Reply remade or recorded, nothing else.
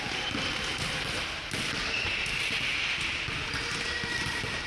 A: recorded